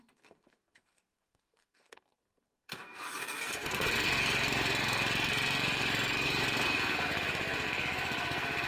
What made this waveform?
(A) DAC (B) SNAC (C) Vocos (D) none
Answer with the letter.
B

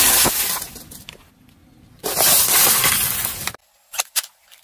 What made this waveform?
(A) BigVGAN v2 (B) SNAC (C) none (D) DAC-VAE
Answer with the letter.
C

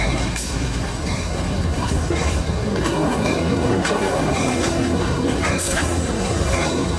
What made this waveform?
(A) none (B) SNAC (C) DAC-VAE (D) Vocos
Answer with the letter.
B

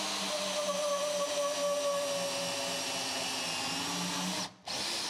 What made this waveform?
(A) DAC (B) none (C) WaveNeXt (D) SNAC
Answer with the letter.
B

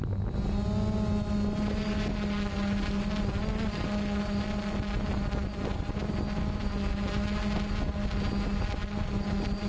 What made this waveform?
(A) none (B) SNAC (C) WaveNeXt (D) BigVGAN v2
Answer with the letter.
A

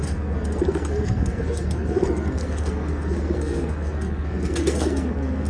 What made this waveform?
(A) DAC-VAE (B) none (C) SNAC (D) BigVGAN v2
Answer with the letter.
C